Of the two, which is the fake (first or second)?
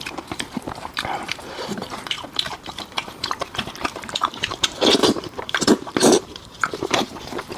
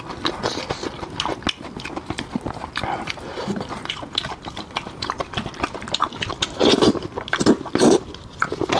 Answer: first